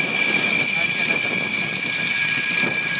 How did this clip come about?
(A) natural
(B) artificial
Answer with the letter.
A